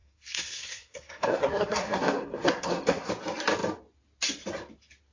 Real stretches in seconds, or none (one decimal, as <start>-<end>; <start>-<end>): 3.1-5.1